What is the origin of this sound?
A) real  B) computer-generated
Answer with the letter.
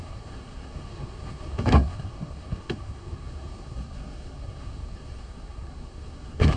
B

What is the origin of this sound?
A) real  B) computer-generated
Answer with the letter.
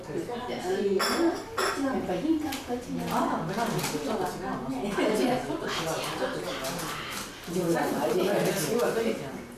A